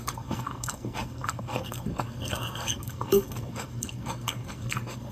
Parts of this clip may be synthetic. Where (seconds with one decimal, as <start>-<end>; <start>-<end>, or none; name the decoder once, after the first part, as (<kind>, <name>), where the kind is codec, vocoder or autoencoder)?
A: 0.0-5.1 (codec, SNAC)